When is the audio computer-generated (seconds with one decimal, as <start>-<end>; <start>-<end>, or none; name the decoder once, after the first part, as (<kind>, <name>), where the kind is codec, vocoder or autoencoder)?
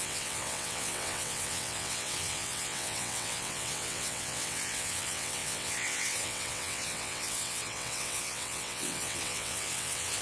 0.0-10.2 (vocoder, WaveNeXt)